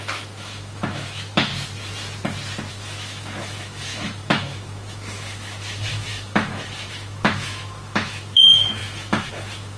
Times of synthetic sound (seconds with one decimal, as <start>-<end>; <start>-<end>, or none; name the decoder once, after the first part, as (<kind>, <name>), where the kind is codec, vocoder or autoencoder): 0.0-1.5 (autoencoder, DAC-VAE); 2.7-9.8